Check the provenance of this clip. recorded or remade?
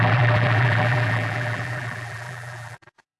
remade